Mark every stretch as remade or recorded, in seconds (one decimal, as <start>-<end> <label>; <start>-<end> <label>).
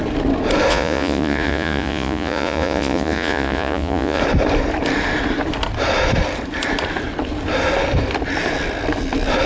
0.0-0.7 recorded; 0.7-4.2 remade; 4.2-9.5 recorded